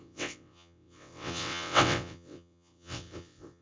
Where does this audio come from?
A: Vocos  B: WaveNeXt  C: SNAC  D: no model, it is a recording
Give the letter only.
B